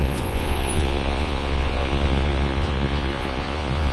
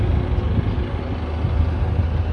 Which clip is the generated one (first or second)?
first